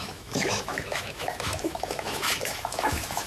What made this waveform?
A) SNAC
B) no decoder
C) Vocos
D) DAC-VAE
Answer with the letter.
D